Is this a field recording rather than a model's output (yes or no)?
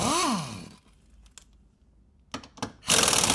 yes